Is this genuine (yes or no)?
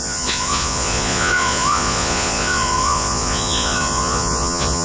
no